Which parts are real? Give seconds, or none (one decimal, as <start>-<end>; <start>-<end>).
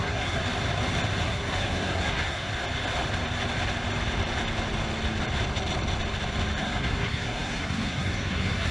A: 0.4-1.2; 2.5-6.6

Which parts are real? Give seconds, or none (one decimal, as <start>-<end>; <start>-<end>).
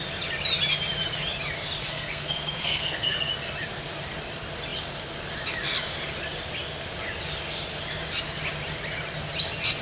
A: 0.0-1.8; 3.3-9.8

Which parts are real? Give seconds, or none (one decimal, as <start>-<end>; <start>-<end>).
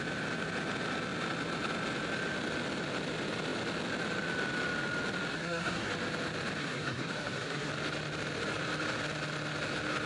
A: 0.0-5.3; 5.9-6.6; 7.7-10.1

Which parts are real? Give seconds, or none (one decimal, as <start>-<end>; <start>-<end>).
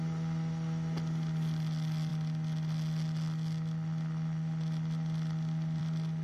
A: 0.0-6.2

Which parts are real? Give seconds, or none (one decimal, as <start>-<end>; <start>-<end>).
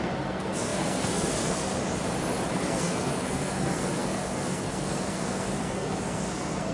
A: 1.8-2.5